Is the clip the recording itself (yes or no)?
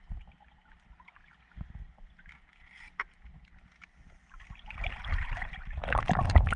yes